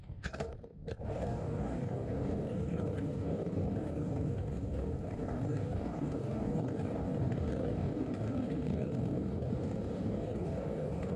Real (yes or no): no